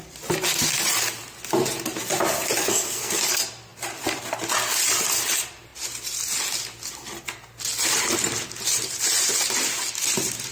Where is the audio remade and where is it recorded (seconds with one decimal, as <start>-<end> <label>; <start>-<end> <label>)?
0.0-2.6 recorded; 2.6-3.2 remade; 3.2-10.5 recorded